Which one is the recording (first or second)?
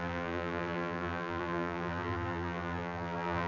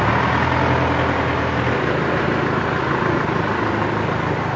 second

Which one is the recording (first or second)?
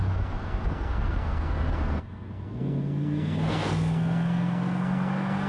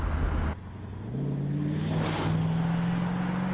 second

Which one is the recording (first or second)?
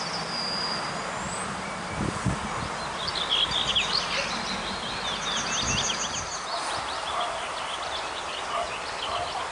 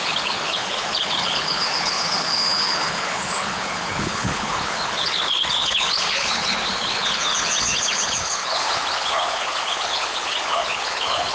first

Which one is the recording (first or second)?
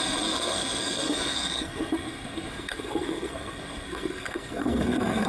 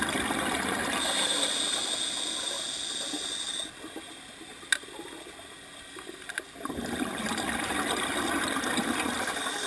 second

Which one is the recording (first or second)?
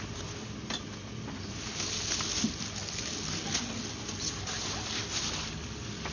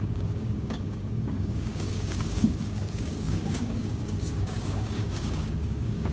first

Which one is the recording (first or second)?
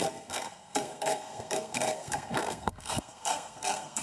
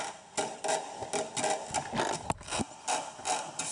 second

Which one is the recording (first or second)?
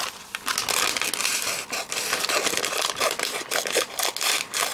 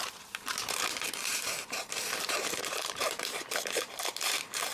first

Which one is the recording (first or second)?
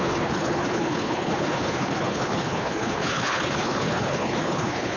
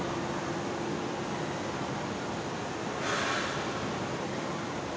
second